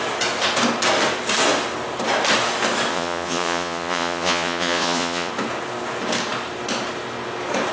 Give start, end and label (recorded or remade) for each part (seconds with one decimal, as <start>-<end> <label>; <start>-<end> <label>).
0.0-2.9 recorded; 2.9-5.3 remade; 5.3-7.7 recorded